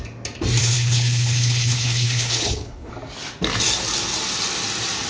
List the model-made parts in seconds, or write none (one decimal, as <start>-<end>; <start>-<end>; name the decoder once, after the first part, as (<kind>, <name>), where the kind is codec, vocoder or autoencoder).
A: 0.6-2.9 (codec, HILCodec)